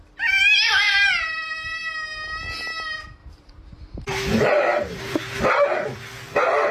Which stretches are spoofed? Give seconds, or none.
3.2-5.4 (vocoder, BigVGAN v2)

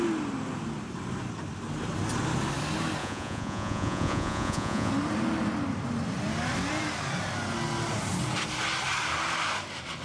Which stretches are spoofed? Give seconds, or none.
3.0-4.9 (vocoder, Vocos)

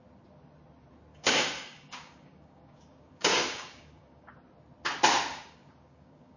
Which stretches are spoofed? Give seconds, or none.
1.1-4.3 (codec, DAC); 5.3-6.4